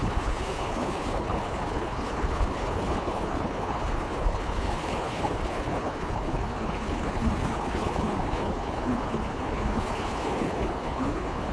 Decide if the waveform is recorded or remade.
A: remade